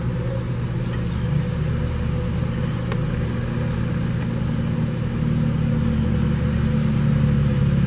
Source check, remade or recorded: recorded